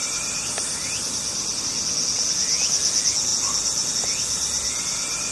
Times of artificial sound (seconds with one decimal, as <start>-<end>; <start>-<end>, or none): 0.0-1.6